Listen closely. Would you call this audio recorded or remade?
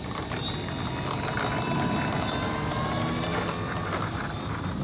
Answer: remade